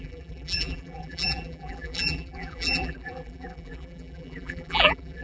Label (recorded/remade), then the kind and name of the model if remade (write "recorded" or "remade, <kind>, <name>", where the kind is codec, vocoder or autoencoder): remade, vocoder, BigVGAN v2